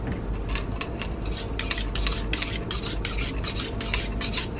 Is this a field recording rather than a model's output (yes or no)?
yes